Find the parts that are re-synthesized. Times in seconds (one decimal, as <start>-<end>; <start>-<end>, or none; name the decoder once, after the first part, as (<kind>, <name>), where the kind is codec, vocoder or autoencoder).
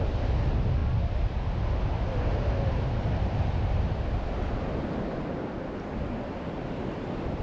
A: none